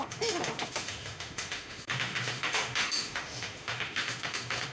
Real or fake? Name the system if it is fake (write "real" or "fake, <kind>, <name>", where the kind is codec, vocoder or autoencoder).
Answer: fake, autoencoder, DAC-VAE